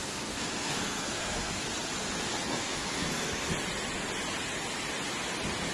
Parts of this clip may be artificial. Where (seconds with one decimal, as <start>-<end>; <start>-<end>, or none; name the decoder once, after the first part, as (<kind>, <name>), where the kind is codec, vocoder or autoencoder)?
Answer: 0.0-1.6 (codec, SNAC); 2.5-3.5